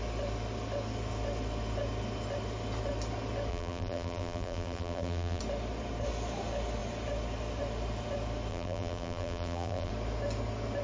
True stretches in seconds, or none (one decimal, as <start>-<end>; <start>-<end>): 0.0-3.5; 5.4-8.5; 9.9-10.8